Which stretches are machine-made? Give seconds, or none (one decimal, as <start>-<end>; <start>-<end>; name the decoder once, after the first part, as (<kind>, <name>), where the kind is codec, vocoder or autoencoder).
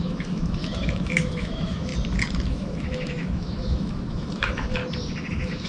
0.0-1.9 (autoencoder, DAC-VAE); 2.5-4.8; 5.3-5.7